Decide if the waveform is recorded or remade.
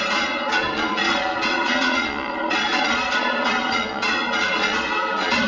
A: remade